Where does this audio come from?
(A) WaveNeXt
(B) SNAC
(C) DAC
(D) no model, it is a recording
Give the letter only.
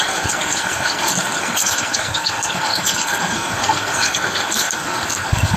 B